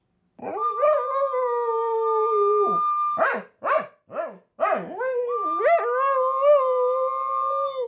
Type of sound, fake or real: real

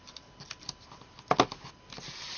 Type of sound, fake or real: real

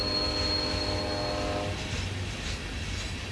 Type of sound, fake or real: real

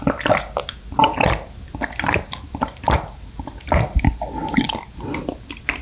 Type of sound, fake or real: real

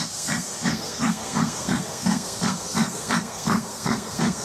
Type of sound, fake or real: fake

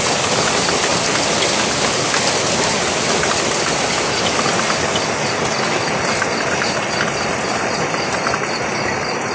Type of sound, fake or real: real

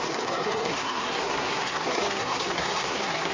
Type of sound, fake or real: fake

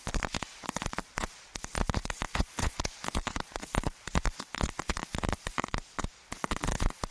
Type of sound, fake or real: fake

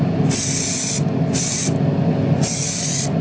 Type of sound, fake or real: real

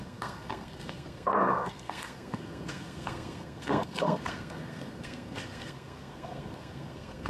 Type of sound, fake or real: fake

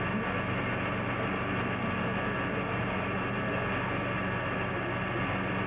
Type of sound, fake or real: real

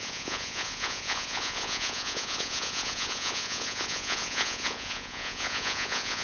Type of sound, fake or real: fake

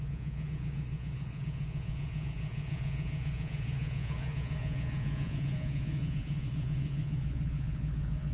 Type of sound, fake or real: fake